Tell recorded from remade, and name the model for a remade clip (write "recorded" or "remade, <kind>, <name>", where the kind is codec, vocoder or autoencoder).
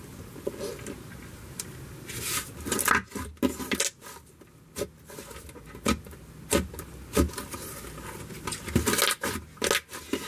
recorded